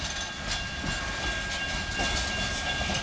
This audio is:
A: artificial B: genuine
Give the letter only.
B